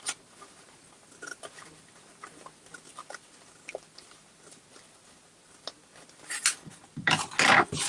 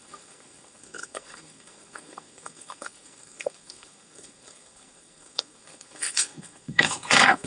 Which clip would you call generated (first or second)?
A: second